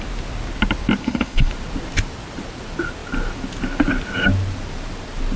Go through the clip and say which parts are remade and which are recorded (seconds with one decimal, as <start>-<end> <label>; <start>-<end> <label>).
0.0-1.0 recorded; 1.0-1.5 remade; 1.5-5.4 recorded